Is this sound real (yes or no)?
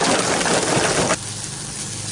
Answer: yes